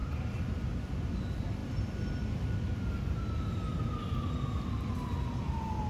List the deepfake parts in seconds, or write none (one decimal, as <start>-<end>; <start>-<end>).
0.0-0.9; 1.6-2.1